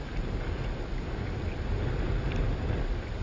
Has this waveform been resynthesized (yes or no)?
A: no